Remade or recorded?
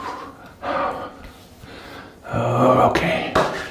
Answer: recorded